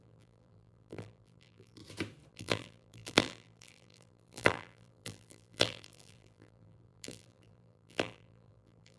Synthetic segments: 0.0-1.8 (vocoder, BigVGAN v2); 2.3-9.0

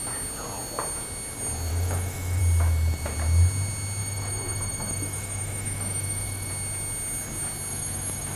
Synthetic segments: 1.7-2.4 (autoencoder, DAC-VAE); 4.0-6.5; 7.7-8.4